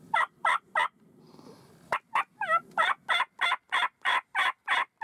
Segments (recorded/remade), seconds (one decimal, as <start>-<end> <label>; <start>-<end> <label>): 0.0-5.0 recorded